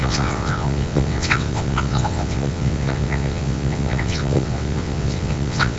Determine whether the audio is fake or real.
fake